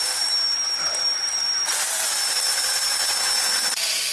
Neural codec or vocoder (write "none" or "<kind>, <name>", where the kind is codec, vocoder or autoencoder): vocoder, BigVGAN v2